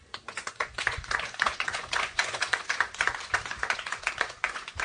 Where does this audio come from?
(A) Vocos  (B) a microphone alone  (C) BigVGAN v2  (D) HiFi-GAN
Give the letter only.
A